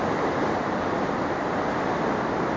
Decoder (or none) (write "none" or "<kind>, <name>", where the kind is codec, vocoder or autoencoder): none